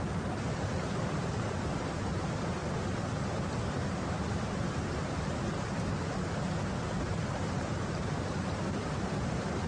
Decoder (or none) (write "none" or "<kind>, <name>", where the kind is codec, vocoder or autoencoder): none